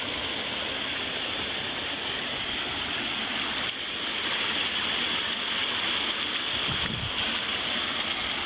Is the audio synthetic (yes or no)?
no